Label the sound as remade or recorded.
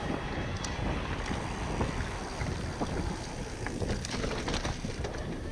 recorded